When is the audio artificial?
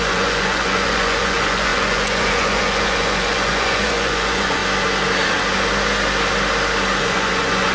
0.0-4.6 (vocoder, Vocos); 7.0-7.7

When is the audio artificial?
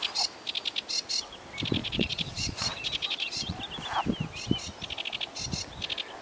1.8-3.6 (vocoder, Vocos)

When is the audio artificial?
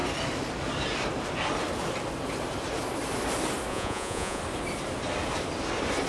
3.7-4.4 (vocoder, Vocos)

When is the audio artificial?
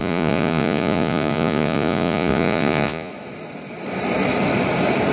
0.0-3.1 (vocoder, Vocos)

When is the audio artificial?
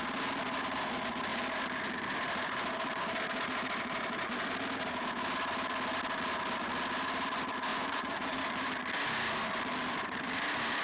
7.7-8.4 (vocoder, Vocos)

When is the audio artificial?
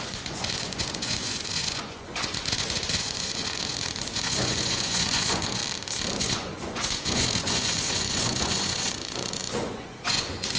0.0-5.6 (vocoder, Vocos); 6.2-10.6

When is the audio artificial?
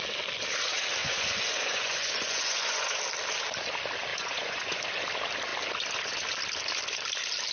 1.0-3.0 (vocoder, Vocos); 4.1-4.8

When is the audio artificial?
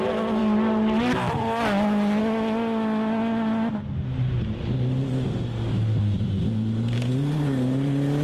none